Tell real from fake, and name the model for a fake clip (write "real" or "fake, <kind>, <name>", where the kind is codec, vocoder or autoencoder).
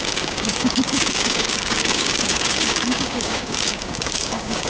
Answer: fake, codec, DAC